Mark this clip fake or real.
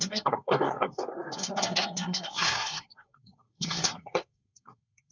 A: fake